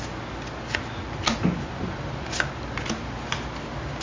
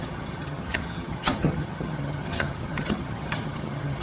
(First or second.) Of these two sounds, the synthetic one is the second